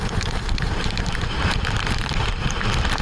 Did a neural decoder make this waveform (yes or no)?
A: yes